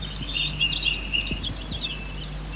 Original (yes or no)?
yes